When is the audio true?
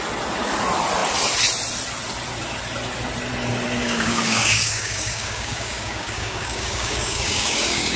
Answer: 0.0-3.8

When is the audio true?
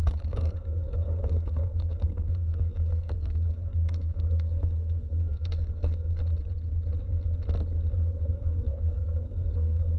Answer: 6.2-8.3